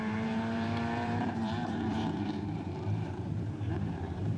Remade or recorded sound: remade